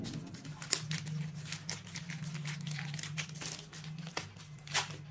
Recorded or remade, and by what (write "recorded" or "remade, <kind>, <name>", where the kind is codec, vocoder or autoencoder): recorded